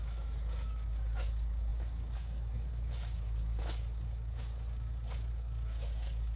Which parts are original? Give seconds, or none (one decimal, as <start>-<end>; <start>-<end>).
none